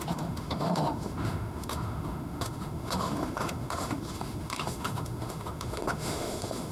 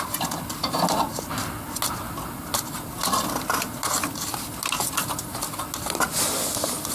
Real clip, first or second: second